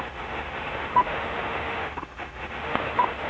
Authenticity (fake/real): fake